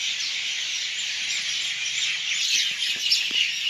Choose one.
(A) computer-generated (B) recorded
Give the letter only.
B